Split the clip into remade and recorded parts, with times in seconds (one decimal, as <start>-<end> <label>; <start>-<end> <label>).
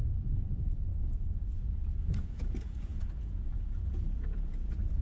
0.0-0.9 remade; 0.9-2.0 recorded; 2.0-5.0 remade